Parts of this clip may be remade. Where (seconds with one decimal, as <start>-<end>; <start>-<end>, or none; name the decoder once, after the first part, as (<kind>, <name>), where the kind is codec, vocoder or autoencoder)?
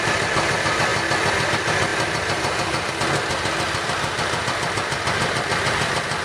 1.9-2.9 (vocoder, BigVGAN v2)